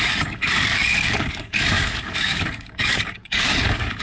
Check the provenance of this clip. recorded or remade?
remade